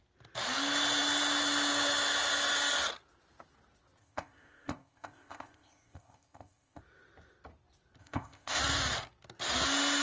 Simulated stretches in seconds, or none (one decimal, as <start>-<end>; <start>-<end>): 4.0-6.8; 8.0-8.6

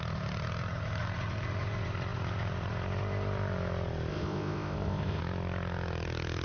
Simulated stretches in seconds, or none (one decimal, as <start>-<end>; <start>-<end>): 4.1-5.2

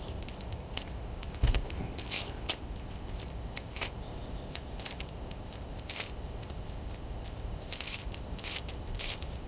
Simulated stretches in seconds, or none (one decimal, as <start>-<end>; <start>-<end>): 0.0-9.5